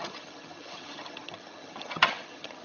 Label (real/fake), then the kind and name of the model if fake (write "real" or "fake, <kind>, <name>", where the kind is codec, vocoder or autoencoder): fake, vocoder, HiFi-GAN